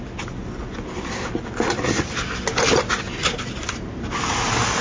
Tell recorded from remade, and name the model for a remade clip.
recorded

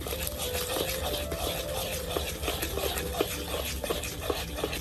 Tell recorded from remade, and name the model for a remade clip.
recorded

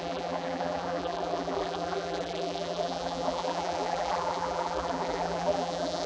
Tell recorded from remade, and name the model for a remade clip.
remade, vocoder, BigVGAN v2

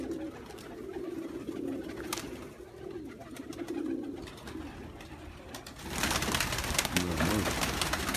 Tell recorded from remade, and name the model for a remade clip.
recorded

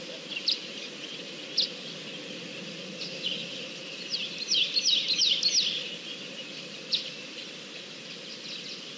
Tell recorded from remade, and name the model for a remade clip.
recorded